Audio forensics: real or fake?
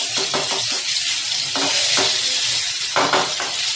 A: real